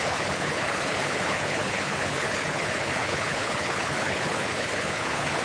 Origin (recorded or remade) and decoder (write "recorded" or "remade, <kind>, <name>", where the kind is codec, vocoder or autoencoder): remade, codec, HILCodec